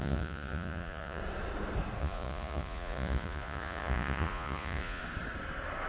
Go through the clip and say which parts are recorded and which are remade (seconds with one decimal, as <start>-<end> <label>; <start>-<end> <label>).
0.0-1.2 remade; 1.2-2.0 recorded; 2.0-5.0 remade; 5.0-5.9 recorded